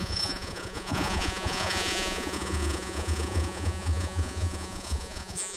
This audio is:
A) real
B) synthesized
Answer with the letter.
B